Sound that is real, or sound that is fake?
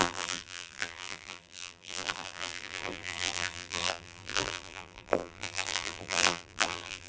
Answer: fake